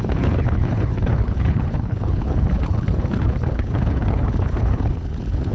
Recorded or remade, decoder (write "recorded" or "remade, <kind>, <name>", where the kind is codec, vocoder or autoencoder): remade, codec, HILCodec